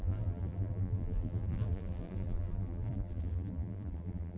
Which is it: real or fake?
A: fake